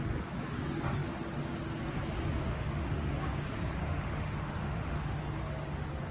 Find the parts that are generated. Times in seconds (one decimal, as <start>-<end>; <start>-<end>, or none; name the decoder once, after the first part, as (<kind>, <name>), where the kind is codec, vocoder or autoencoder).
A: 2.5-3.1 (autoencoder, DAC-VAE); 3.8-5.2